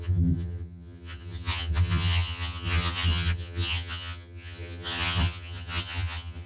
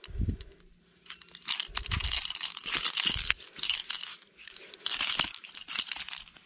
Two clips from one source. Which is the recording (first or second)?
second